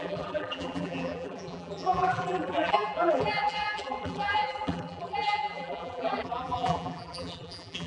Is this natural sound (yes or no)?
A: no